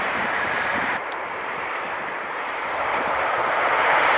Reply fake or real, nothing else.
fake